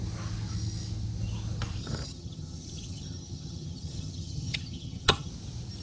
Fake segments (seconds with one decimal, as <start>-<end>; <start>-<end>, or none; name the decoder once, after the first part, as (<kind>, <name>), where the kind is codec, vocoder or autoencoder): 1.8-5.3 (vocoder, HiFi-GAN)